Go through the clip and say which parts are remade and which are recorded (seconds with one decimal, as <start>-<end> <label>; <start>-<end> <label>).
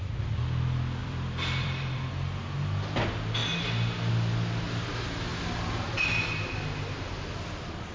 0.0-1.0 recorded; 1.0-2.1 remade; 2.1-7.9 recorded